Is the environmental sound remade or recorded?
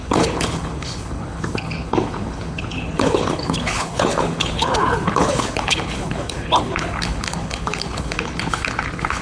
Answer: remade